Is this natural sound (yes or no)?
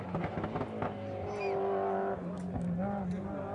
yes